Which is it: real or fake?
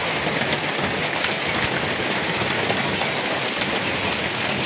real